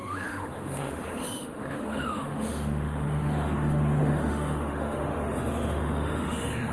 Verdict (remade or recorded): remade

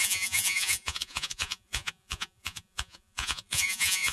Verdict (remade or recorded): remade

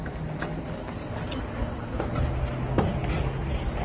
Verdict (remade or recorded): recorded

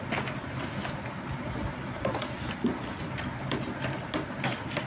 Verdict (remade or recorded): recorded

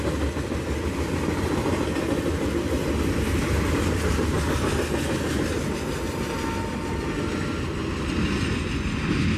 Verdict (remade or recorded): recorded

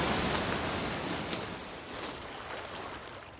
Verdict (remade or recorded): recorded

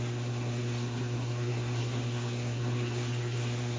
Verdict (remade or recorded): remade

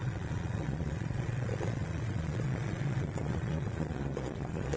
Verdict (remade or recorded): remade